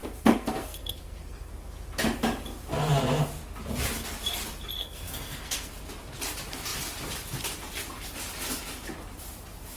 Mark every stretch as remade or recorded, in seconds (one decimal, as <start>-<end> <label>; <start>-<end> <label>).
0.0-1.5 remade; 1.5-4.8 recorded; 4.8-5.7 remade; 5.7-9.8 recorded